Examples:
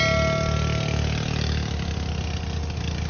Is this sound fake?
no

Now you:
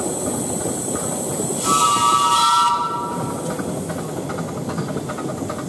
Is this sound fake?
no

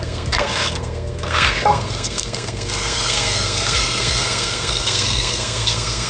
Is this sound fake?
yes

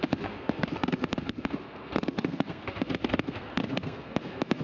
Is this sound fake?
yes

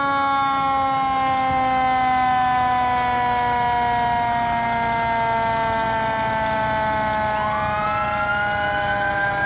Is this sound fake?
no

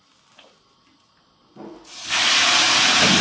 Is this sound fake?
no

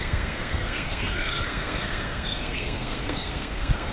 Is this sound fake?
yes